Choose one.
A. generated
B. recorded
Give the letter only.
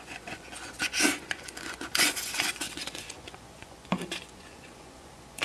A